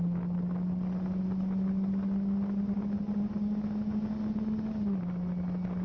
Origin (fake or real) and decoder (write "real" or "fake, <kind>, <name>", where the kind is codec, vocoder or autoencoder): real